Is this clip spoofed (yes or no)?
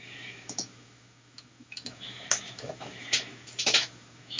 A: yes